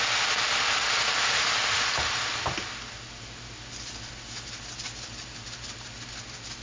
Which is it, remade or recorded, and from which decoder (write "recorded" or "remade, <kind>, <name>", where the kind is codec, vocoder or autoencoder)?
recorded